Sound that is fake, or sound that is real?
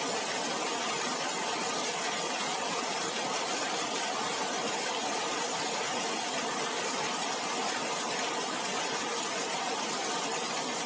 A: real